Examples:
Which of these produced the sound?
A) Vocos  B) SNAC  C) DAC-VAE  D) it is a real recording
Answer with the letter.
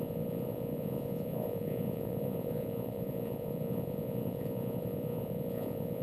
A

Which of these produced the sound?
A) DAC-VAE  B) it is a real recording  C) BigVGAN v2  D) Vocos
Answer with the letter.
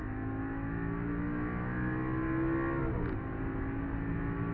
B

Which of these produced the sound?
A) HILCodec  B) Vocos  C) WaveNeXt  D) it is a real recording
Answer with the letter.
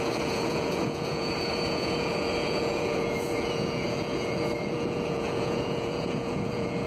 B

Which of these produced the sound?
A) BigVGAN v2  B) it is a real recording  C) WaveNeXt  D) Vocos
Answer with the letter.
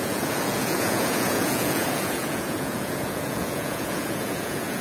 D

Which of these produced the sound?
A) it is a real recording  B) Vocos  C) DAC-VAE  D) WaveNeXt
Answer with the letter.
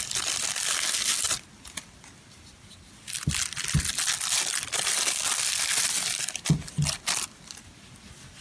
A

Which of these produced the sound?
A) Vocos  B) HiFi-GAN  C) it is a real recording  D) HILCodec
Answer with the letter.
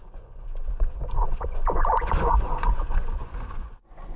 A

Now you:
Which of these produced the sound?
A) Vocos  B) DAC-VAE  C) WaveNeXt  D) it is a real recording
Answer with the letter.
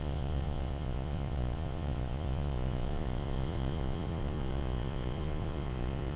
A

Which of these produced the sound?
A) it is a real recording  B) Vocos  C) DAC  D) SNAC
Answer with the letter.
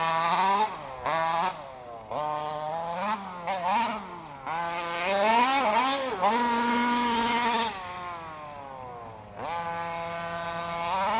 A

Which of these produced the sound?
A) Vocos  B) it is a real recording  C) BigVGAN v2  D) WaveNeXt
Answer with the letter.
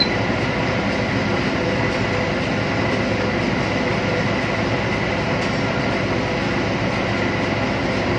B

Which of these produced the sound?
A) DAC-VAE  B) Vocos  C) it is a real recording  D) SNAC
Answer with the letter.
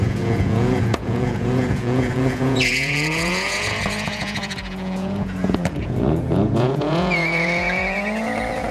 B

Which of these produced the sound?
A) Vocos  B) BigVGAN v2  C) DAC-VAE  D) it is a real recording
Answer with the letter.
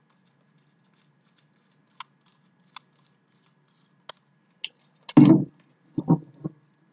D